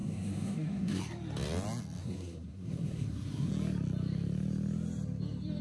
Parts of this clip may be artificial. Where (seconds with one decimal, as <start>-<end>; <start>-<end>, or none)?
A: 0.0-1.0; 2.0-3.5